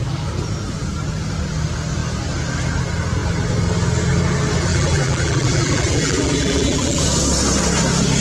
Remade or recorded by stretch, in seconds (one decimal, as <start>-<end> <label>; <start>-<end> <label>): 0.0-4.7 recorded; 4.7-7.0 remade; 7.0-8.2 recorded